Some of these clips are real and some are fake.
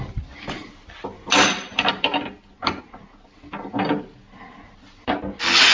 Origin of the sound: real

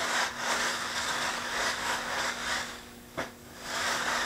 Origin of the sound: fake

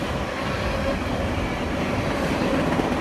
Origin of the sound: real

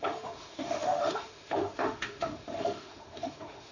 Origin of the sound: fake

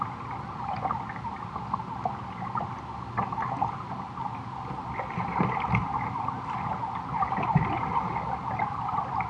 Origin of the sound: real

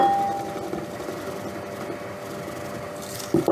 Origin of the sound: real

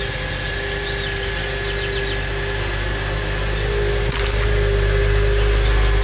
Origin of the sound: real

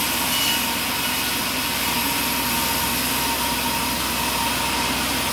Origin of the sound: real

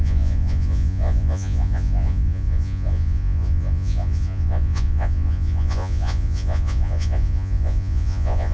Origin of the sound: fake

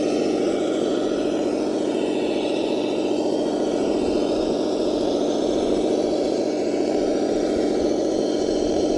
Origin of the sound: fake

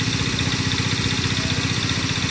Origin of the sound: real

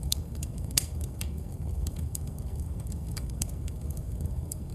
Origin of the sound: fake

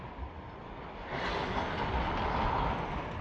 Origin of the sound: real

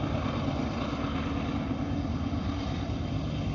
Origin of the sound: real